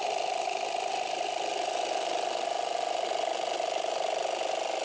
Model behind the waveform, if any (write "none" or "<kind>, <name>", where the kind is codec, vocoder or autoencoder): none